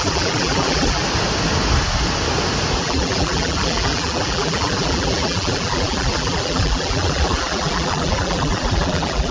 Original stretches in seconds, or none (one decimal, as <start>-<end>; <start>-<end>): 1.0-2.8